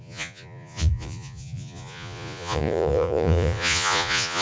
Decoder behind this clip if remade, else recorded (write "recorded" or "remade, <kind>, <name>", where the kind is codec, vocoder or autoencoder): remade, vocoder, Vocos